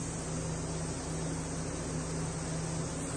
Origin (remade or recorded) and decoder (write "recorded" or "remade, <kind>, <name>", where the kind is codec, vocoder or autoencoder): recorded